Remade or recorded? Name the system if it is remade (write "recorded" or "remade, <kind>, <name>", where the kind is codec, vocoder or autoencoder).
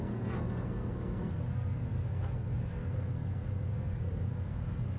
remade, codec, SNAC